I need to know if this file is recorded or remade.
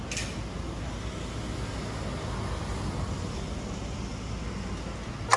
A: recorded